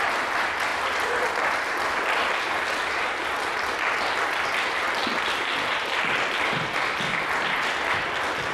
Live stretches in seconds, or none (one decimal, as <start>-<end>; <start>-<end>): 0.0-0.7; 1.3-5.0; 7.5-8.5